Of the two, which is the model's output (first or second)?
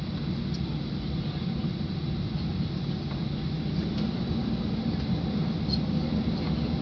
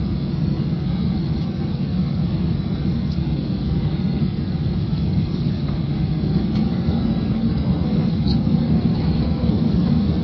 second